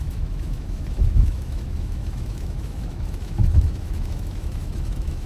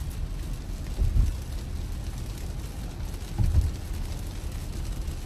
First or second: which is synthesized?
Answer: first